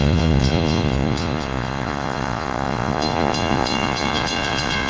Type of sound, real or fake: fake